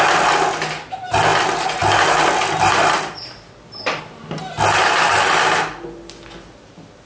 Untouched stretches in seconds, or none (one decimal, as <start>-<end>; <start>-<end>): 0.0-7.1